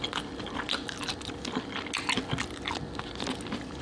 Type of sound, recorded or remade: recorded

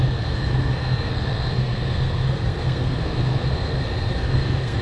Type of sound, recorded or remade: remade